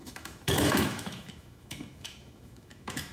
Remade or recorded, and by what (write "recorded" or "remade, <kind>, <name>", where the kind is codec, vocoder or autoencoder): remade, autoencoder, DAC-VAE